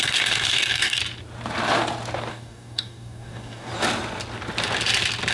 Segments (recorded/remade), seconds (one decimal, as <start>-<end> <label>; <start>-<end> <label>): 0.0-1.0 remade; 1.0-2.3 recorded; 2.3-3.7 remade; 3.7-5.3 recorded